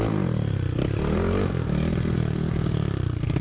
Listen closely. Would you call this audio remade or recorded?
recorded